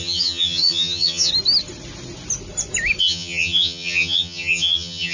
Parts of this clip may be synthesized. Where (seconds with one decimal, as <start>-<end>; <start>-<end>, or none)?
0.0-1.3; 3.0-5.1

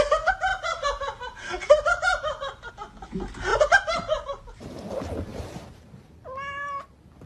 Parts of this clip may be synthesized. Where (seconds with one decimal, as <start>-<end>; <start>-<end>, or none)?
0.5-2.7; 3.5-4.4; 5.3-5.9

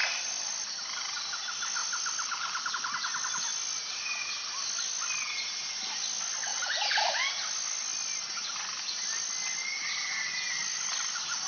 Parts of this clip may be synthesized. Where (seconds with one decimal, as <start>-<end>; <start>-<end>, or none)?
0.0-0.8; 1.8-2.7; 6.5-7.3

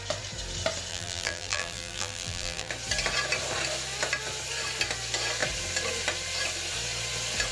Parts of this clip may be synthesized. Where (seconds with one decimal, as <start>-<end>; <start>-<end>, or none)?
0.9-2.7

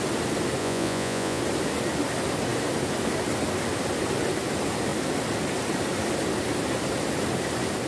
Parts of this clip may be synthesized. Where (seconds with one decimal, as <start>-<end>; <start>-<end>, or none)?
0.6-1.4

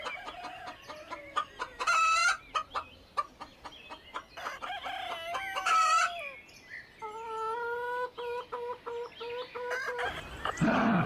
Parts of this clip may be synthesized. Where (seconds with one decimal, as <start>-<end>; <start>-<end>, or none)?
none

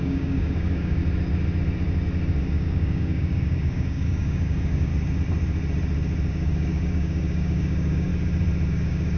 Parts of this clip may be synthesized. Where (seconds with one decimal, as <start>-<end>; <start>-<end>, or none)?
0.0-1.0; 2.4-4.9; 6.3-8.1; 8.7-9.2